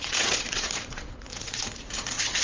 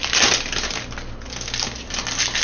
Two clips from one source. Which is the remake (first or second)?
first